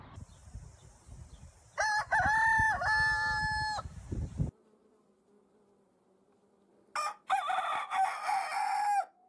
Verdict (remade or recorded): recorded